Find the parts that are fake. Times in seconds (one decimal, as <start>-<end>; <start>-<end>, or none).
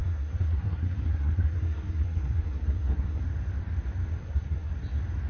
0.0-3.2; 4.2-4.7